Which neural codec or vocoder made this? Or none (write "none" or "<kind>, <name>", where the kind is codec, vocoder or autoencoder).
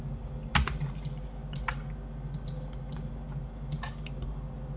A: none